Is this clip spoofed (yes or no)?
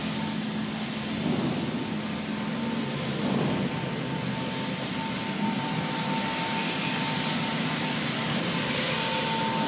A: no